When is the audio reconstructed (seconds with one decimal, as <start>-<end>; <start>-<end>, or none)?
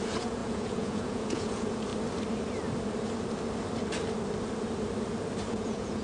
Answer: 0.0-1.9; 5.5-6.0